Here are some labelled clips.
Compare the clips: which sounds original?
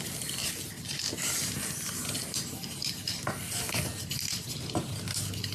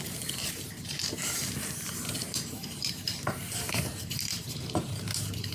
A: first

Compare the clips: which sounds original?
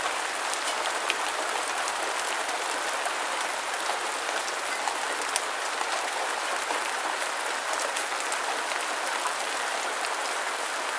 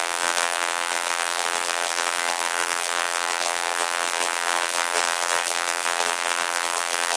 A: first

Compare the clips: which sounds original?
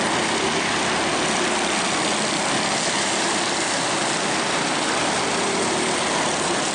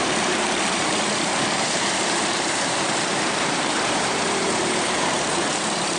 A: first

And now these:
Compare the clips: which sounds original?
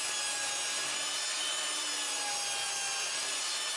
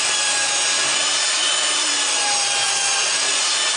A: first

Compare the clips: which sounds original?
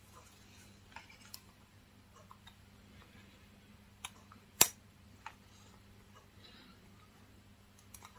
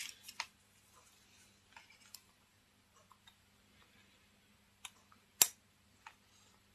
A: second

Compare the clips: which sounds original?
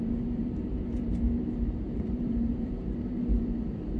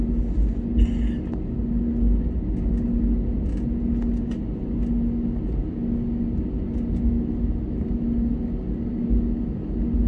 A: second